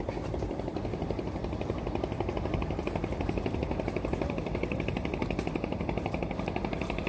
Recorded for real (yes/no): yes